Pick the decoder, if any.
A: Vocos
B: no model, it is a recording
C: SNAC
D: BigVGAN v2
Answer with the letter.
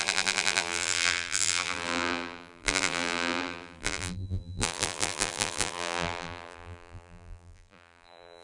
D